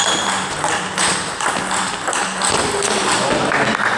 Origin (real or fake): real